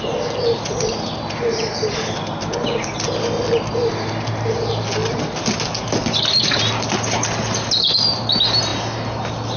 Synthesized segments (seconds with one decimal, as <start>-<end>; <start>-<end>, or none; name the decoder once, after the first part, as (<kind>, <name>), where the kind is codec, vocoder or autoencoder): none